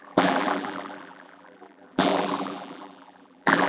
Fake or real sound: fake